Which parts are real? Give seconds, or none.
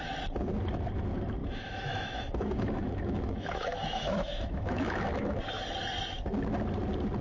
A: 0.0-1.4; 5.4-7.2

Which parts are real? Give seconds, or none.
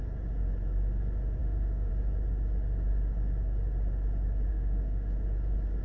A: 0.0-1.4; 1.9-4.5; 5.1-5.8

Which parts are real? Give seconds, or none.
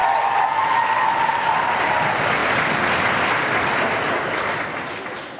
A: 0.0-5.4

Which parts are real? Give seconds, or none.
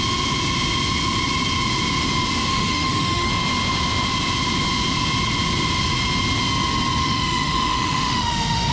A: 0.0-2.5; 3.3-7.0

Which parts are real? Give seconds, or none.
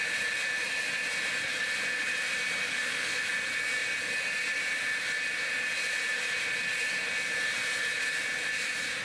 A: 0.0-2.7; 3.3-9.0